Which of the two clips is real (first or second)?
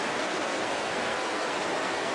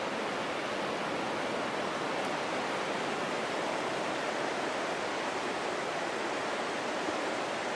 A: second